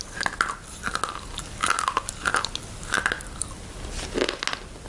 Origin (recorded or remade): recorded